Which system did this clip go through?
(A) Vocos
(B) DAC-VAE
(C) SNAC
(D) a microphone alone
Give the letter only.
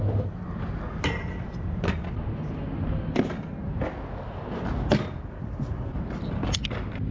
D